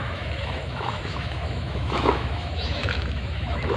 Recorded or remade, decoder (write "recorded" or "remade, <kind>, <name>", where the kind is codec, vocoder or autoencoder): remade, autoencoder, DAC-VAE